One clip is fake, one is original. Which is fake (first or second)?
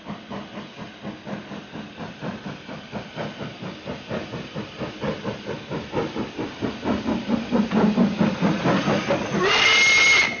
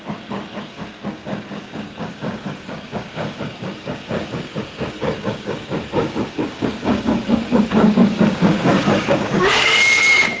second